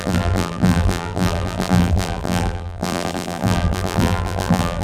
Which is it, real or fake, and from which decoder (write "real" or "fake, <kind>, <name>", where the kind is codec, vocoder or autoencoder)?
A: fake, vocoder, BigVGAN v2